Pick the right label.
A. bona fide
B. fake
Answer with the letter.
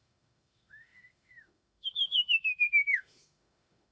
B